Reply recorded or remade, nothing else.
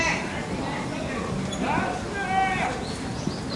recorded